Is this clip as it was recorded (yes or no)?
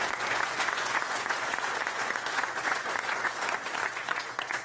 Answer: no